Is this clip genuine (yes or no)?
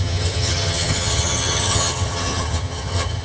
no